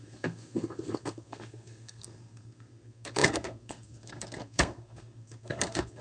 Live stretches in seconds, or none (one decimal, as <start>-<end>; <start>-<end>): none